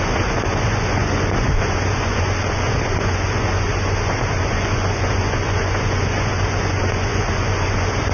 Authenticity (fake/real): fake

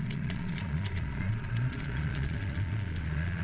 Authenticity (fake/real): fake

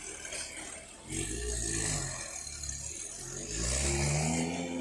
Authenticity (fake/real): real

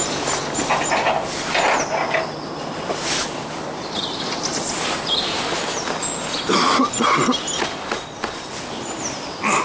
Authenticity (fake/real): real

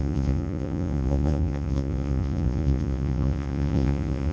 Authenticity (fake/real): fake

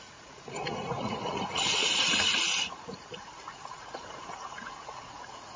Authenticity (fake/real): fake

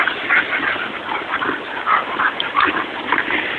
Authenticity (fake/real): real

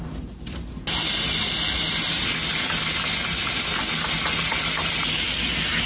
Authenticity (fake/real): real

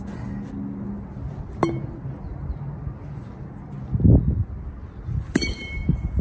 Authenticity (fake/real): real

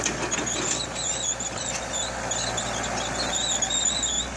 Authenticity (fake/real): real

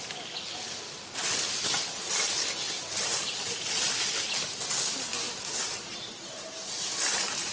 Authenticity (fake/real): real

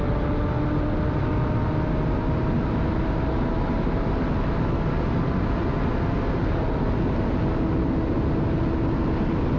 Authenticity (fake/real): real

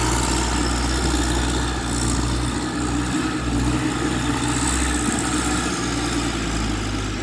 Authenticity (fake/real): real